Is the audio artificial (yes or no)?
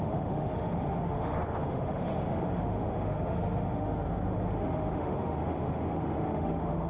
yes